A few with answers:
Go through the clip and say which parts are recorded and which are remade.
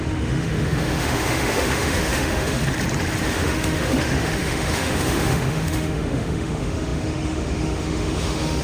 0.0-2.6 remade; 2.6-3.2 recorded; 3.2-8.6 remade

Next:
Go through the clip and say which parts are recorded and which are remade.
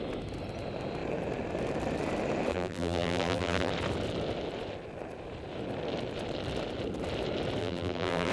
0.0-2.5 recorded; 2.5-3.7 remade; 3.7-7.6 recorded; 7.6-8.3 remade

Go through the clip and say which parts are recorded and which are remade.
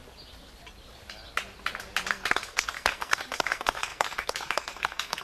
0.0-2.1 recorded; 2.1-5.2 remade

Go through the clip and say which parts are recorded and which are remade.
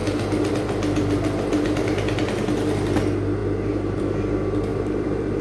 0.0-3.4 recorded; 3.4-4.0 remade; 4.0-4.7 recorded; 4.7-5.4 remade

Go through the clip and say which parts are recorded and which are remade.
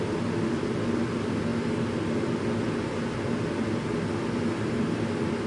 0.0-5.5 recorded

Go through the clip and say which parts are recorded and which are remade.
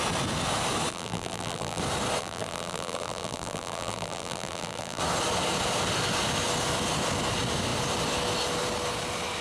0.0-0.9 recorded; 0.9-1.8 remade; 1.8-2.2 recorded; 2.2-5.0 remade; 5.0-9.4 recorded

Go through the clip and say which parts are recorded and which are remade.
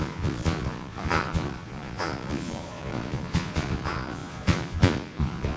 0.0-5.6 remade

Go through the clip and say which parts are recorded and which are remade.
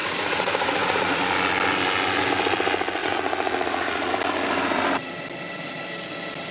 0.0-1.2 remade; 1.2-3.0 recorded; 3.0-4.1 remade; 4.1-6.5 recorded